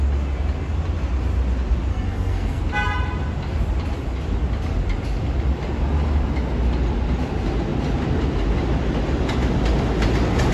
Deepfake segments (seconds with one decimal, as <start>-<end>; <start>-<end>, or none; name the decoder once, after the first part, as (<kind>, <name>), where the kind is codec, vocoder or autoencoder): 1.9-2.6 (codec, SNAC)